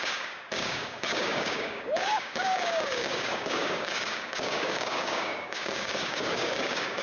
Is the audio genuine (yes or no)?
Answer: no